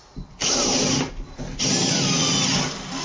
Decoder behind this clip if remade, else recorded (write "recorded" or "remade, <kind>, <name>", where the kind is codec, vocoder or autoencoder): recorded